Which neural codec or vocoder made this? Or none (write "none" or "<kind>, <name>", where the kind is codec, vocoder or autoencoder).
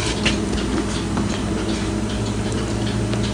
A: none